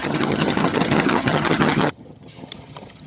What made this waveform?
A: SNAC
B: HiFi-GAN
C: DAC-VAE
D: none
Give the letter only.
B